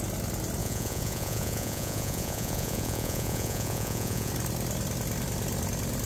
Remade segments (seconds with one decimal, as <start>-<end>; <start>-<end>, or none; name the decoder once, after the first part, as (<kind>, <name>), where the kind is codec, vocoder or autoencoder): 0.6-4.3 (vocoder, Vocos)